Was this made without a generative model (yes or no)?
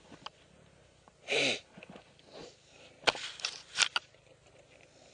yes